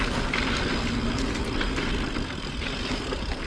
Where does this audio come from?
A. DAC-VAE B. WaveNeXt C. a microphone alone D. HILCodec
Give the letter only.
C